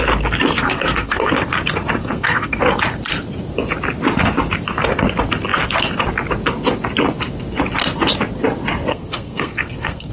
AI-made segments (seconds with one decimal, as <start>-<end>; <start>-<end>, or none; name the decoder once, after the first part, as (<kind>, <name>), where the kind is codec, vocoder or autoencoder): 0.6-1.3 (codec, SNAC); 2.0-2.6; 8.9-10.1